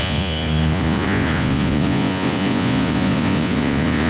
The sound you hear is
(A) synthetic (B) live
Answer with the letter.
A